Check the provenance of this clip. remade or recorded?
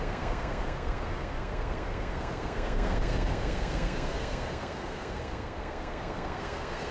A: remade